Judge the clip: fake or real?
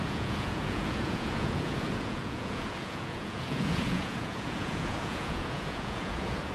fake